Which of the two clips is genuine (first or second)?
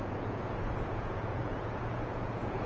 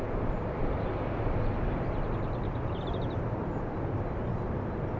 second